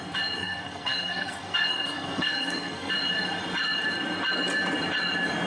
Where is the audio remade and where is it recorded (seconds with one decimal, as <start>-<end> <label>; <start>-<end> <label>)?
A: 0.0-0.4 recorded; 0.4-2.9 remade; 2.9-5.5 recorded